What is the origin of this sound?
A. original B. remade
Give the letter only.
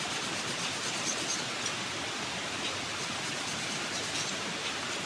A